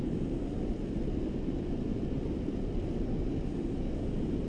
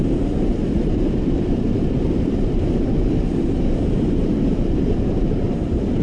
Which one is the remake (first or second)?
second